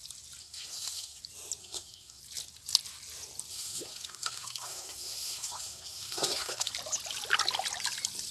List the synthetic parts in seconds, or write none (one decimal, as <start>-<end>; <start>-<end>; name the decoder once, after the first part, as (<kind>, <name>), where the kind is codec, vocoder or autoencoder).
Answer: 0.4-1.2 (codec, SNAC); 1.6-2.2; 3.5-6.7